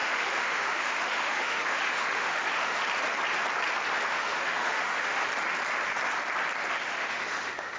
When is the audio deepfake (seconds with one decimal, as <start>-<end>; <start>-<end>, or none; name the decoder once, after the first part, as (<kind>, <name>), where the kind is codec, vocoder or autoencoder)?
0.0-2.8 (autoencoder, DAC-VAE); 4.1-5.2; 6.7-7.8